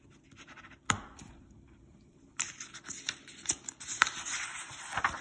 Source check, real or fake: fake